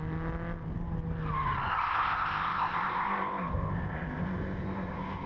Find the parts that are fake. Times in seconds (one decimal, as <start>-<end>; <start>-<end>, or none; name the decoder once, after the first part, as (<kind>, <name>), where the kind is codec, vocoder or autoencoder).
1.7-5.3 (codec, ZipCodec)